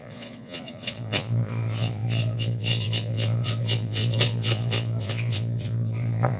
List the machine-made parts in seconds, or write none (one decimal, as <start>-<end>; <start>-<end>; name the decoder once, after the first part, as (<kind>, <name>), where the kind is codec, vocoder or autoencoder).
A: 0.0-6.4 (vocoder, Vocos)